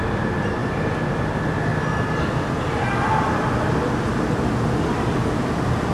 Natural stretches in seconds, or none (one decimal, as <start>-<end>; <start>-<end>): 0.0-5.9